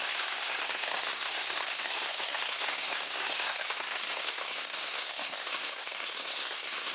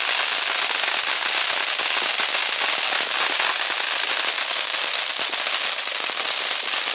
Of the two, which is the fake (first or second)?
first